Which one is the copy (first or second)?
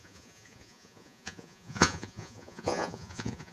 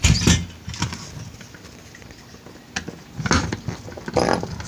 first